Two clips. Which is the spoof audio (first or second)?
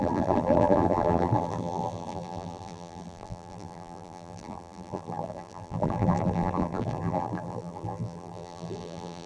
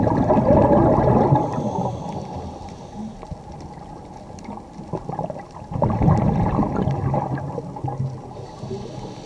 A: first